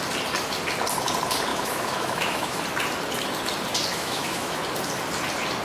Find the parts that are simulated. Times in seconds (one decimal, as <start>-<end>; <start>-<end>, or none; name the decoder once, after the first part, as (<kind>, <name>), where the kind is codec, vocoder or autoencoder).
1.5-2.6 (autoencoder, DAC-VAE); 3.9-4.6